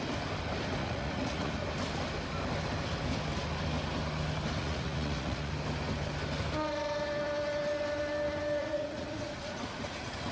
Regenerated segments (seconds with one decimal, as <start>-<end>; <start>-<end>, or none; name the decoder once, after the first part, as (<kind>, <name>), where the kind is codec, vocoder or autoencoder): 0.8-1.5 (vocoder, Vocos); 4.6-5.5; 8.6-10.3